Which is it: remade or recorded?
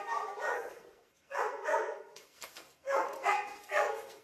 remade